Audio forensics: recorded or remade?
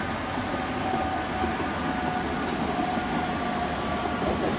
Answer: recorded